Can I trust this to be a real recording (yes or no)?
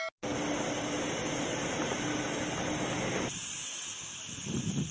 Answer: yes